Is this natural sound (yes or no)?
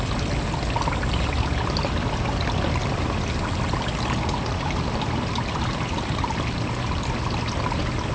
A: yes